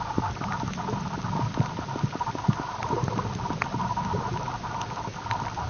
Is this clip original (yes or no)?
no